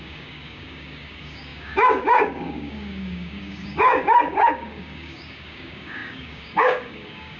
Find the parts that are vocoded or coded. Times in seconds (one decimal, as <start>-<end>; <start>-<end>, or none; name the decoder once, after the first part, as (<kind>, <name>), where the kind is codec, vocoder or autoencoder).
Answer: 0.0-7.4 (codec, DAC)